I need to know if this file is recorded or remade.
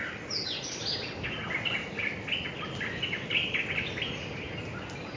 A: recorded